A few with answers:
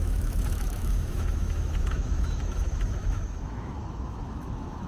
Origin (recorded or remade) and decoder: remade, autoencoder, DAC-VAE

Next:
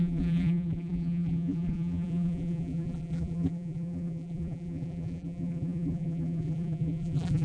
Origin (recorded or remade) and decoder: remade, vocoder, BigVGAN v2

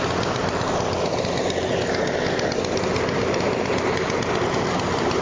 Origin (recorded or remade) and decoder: recorded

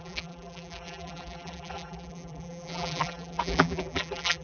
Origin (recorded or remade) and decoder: remade, vocoder, BigVGAN v2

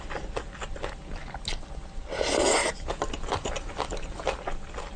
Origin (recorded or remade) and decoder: recorded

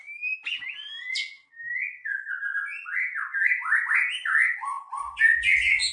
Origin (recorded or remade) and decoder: recorded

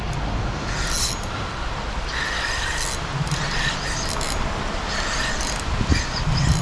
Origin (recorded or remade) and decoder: recorded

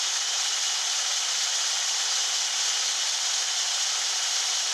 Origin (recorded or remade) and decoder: recorded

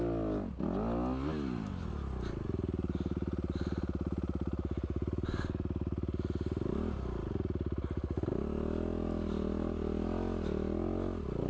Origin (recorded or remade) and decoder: recorded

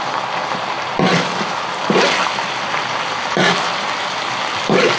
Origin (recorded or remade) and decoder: recorded